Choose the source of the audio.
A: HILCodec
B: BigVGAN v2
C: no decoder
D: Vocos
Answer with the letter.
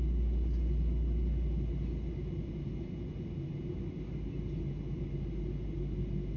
C